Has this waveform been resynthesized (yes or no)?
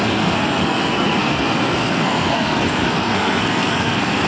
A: yes